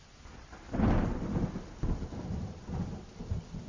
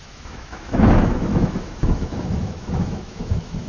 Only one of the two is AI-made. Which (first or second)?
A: second